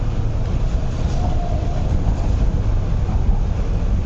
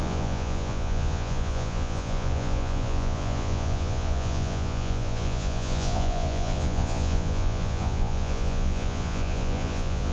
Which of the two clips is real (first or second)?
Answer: first